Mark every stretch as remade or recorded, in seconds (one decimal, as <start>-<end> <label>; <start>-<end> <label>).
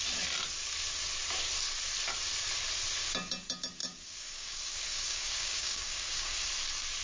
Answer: 0.0-3.8 recorded; 3.8-6.5 remade; 6.5-7.0 recorded